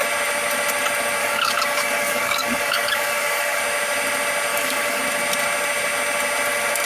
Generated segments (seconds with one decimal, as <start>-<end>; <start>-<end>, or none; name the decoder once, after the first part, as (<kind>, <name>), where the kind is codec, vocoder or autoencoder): 1.2-3.6 (codec, DAC); 4.5-5.0